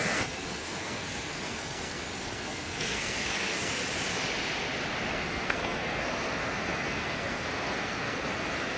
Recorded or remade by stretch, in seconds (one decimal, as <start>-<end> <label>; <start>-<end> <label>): 0.0-3.8 remade; 3.8-5.1 recorded; 5.1-8.8 remade